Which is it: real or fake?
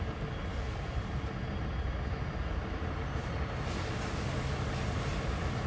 real